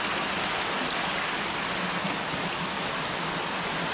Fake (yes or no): no